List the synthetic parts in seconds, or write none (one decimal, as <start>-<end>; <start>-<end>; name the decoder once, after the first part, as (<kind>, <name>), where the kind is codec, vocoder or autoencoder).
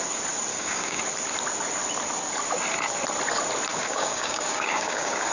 0.5-1.0 (codec, DAC); 3.7-5.3